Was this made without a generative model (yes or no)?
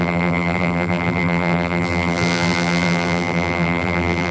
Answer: no